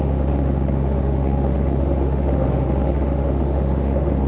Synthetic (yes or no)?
yes